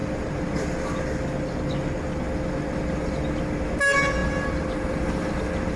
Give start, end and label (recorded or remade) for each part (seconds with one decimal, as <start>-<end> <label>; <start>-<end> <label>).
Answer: 0.0-5.8 recorded